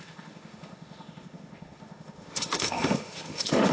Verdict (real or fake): fake